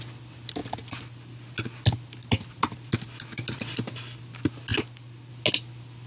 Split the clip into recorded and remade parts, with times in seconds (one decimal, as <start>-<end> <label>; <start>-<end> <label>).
0.0-6.1 recorded